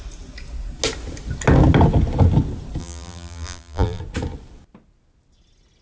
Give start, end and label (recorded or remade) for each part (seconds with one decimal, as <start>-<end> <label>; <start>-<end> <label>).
0.0-2.8 recorded; 2.8-4.0 remade; 4.0-5.8 recorded